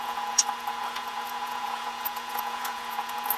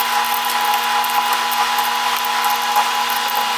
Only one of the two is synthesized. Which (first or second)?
first